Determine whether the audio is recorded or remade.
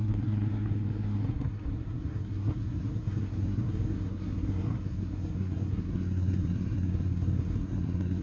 remade